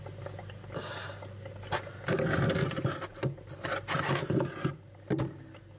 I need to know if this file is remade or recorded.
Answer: recorded